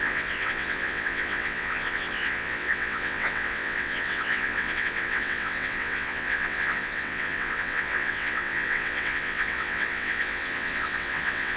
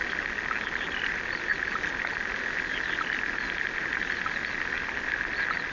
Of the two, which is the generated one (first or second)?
first